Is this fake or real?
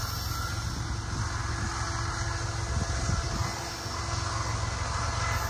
real